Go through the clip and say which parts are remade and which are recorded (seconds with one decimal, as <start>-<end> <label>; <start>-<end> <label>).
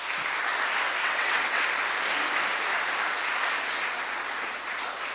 0.0-1.0 recorded; 1.0-1.6 remade; 1.6-5.1 recorded